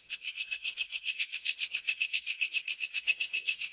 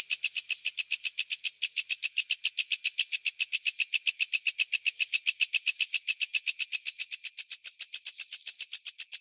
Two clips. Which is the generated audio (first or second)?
first